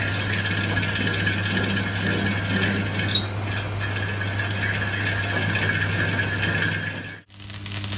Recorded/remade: recorded